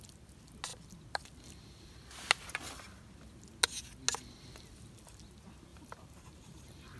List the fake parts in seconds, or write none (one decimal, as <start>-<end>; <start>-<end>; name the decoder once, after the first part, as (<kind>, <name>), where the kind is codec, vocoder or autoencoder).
5.7-7.0 (vocoder, BigVGAN v2)

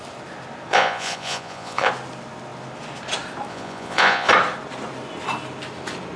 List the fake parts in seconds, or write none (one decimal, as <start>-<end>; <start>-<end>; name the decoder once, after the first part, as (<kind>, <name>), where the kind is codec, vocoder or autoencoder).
0.7-1.9 (vocoder, Vocos); 3.5-4.3

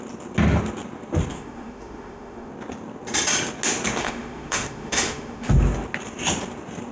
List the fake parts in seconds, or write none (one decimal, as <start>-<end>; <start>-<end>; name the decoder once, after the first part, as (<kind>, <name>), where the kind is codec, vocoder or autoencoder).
1.3-2.5 (autoencoder, DAC-VAE); 4.0-5.5

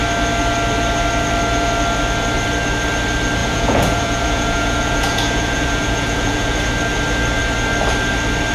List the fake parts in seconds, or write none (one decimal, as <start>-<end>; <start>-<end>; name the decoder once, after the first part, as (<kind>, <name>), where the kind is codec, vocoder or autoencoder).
3.4-6.6 (vocoder, Vocos)